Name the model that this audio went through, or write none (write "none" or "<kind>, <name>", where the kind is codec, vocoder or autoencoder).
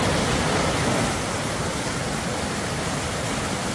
none